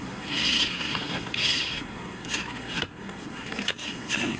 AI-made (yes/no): yes